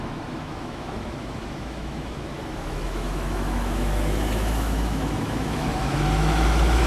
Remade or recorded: remade